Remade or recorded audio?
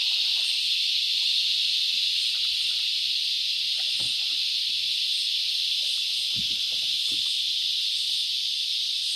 recorded